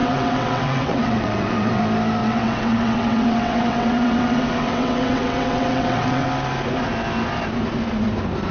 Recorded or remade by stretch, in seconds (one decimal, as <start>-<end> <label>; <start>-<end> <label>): 0.0-1.8 remade; 1.8-2.2 recorded; 2.2-6.3 remade; 6.3-8.5 recorded